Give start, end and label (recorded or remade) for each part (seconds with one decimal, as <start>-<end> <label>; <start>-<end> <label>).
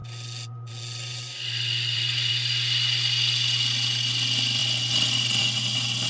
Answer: 0.0-2.3 remade; 2.3-6.1 recorded